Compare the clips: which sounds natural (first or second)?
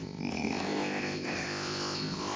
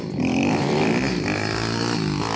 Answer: second